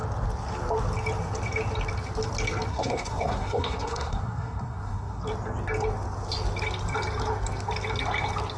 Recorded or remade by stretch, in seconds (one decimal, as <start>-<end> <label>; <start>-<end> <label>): 0.0-2.7 recorded; 2.7-5.2 remade; 5.2-8.6 recorded